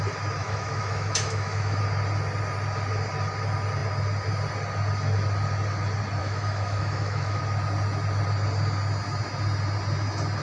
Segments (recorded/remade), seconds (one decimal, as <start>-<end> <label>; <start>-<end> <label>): 0.0-0.4 recorded; 0.4-1.8 remade; 1.8-6.2 recorded; 6.2-7.4 remade; 7.4-10.4 recorded